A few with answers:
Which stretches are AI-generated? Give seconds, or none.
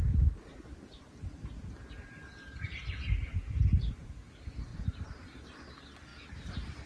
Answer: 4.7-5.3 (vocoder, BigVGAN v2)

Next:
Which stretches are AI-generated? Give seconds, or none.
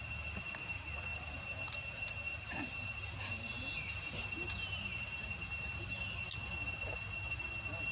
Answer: 1.1-5.8 (vocoder, BigVGAN v2)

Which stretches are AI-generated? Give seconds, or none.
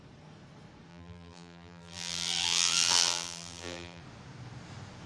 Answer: 0.9-4.0 (vocoder, BigVGAN v2)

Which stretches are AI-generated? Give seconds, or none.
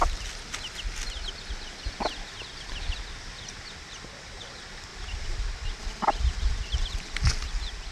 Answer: 4.9-5.6 (vocoder, BigVGAN v2)